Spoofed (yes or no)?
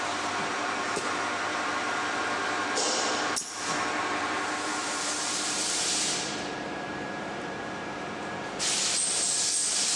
yes